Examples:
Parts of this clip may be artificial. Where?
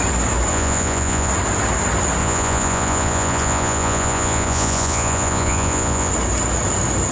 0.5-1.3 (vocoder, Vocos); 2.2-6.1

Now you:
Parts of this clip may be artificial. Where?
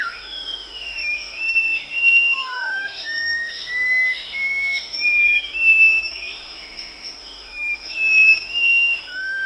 0.0-9.5 (autoencoder, DAC-VAE)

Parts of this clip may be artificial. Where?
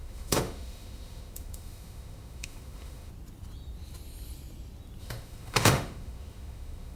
0.0-3.1 (autoencoder, DAC-VAE); 5.0-7.0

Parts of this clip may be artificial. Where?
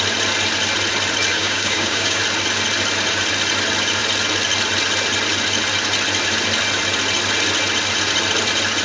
1.3-2.2 (codec, DAC)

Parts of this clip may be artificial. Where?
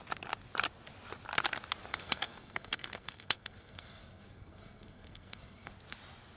1.9-5.7 (codec, SNAC)